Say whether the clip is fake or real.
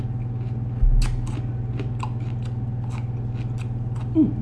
real